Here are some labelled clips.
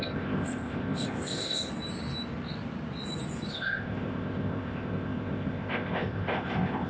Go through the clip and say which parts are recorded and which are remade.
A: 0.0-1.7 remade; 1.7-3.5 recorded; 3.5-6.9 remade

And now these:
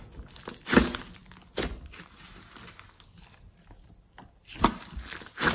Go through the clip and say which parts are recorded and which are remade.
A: 0.0-5.5 recorded